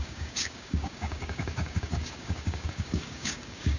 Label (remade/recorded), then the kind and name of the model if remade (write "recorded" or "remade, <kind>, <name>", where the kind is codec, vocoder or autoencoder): remade, codec, DAC